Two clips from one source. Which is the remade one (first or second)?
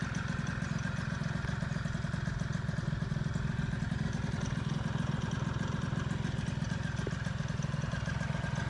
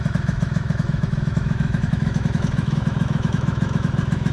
second